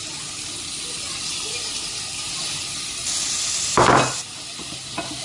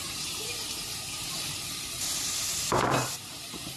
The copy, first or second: second